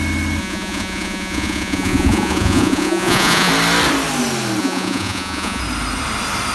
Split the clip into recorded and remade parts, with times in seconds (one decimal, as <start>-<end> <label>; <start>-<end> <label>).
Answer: 0.0-0.4 recorded; 0.4-3.5 remade; 3.5-4.6 recorded; 4.6-5.6 remade; 5.6-6.5 recorded